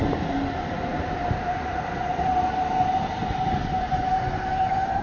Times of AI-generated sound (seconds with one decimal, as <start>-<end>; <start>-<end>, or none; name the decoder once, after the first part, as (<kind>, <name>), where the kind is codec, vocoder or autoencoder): none